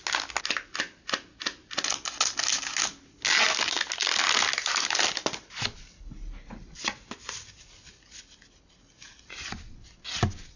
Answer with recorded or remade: recorded